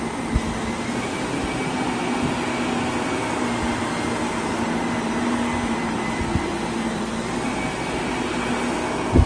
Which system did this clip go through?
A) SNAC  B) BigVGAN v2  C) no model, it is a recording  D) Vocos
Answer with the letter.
C